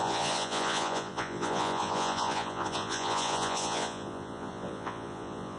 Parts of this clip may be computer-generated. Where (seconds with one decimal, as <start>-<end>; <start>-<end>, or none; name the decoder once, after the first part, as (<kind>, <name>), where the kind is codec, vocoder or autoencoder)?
0.0-5.6 (vocoder, Vocos)